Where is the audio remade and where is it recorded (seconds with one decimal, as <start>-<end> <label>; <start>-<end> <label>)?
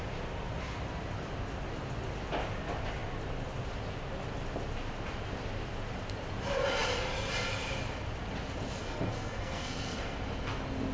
0.0-8.8 recorded; 8.8-10.2 remade; 10.2-10.9 recorded